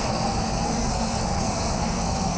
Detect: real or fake fake